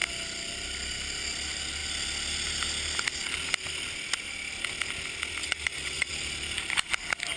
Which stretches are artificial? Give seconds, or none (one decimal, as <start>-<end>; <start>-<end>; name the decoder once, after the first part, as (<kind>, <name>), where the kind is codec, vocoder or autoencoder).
5.4-6.1 (vocoder, WaveNeXt)